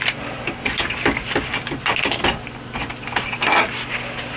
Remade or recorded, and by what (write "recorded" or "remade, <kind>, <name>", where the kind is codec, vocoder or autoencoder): recorded